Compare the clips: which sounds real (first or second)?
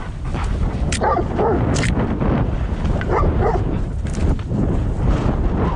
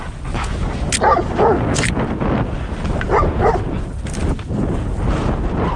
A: second